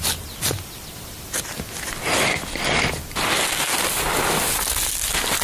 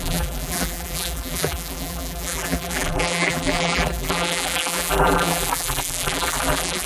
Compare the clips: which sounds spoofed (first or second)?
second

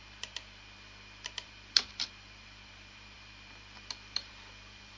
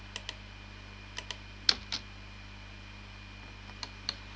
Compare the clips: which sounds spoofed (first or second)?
first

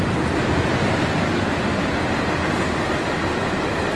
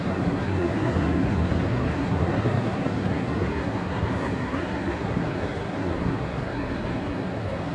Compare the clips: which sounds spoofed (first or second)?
second